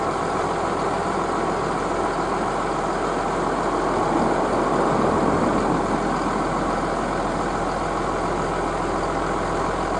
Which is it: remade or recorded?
recorded